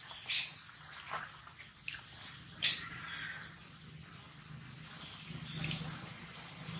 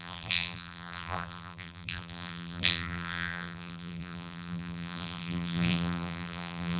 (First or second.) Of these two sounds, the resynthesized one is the second